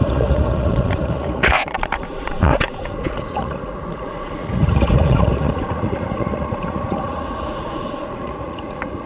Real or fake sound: fake